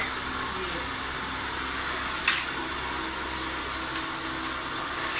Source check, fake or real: real